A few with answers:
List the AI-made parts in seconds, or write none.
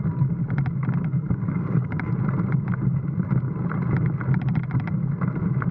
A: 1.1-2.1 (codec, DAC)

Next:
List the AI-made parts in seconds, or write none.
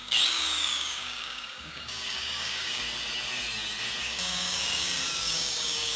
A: 0.0-2.8 (codec, DAC); 4.0-6.0